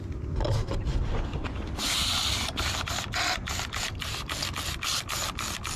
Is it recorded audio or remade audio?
recorded